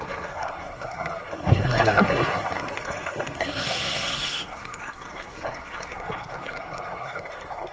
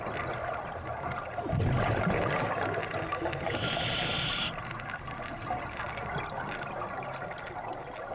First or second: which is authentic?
second